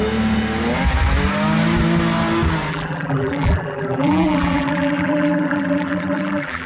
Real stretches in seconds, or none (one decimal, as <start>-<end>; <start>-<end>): 0.0-2.7